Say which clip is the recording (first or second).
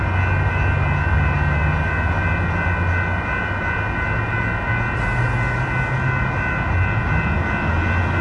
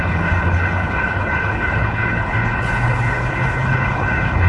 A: first